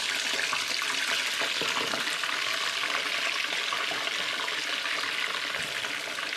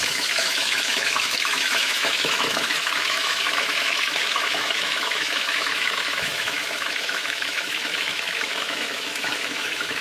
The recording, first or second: first